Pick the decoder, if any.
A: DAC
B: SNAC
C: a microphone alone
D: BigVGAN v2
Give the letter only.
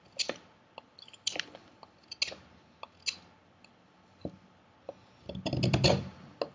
C